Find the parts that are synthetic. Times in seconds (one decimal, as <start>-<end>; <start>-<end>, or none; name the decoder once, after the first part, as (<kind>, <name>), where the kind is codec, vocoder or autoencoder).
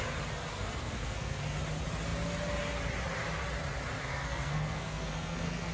0.5-1.4 (codec, SNAC); 4.1-5.7